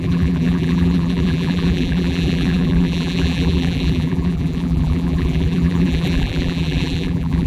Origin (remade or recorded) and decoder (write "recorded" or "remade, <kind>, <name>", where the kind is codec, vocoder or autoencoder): remade, vocoder, BigVGAN v2